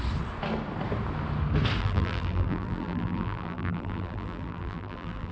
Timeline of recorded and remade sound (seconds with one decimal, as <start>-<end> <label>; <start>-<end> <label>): 0.0-1.8 recorded; 1.8-5.3 remade